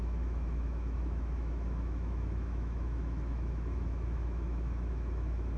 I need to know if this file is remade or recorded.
remade